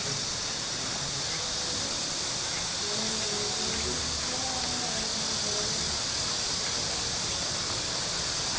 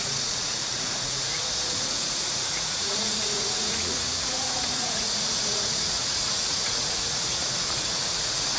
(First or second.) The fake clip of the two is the second